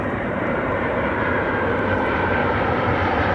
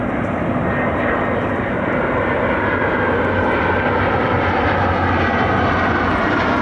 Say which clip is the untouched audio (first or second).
second